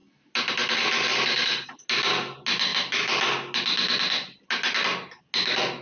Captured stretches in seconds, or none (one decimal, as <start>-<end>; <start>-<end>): 0.0-1.1; 1.8-5.8